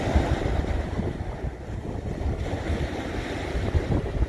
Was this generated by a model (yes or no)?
no